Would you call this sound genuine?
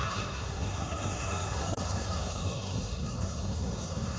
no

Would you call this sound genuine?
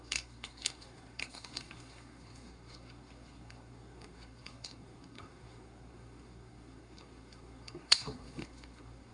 no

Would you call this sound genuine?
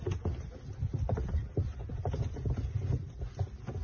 yes